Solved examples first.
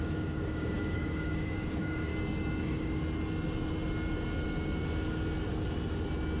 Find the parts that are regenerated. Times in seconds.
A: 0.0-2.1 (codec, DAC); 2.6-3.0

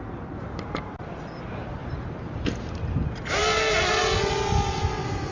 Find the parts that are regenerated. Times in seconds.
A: 0.0-1.0 (vocoder, BigVGAN v2); 1.8-2.4

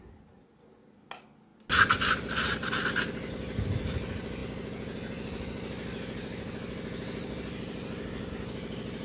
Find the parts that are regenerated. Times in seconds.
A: none

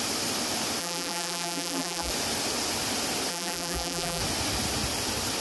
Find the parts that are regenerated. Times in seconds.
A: 0.8-2.1 (vocoder, BigVGAN v2); 3.3-4.2

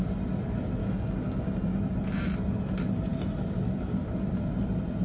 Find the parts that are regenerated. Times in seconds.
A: 0.8-1.8 (codec, DAC)

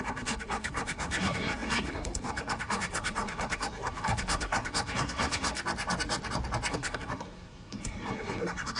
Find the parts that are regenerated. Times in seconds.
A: 0.0-5.6 (codec, SNAC); 6.7-8.8